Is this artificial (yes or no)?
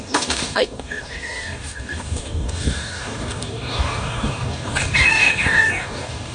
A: yes